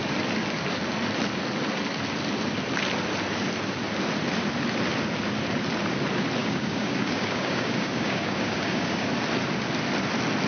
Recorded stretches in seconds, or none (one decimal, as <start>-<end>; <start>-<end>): 0.0-6.4; 9.1-10.5